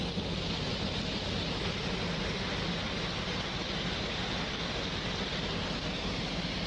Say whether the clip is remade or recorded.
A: recorded